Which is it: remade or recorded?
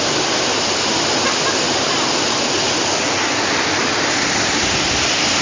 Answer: recorded